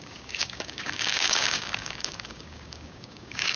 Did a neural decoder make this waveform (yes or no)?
yes